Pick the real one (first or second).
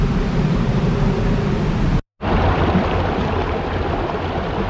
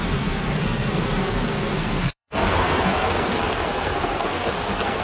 first